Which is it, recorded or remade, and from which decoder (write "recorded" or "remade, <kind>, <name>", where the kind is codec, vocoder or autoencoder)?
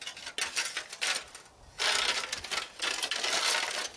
recorded